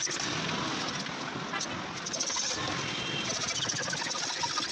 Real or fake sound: real